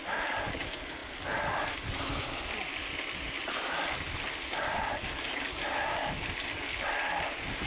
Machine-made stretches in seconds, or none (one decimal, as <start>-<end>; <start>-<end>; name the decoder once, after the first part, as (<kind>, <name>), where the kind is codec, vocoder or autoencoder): 1.0-5.0 (vocoder, BigVGAN v2)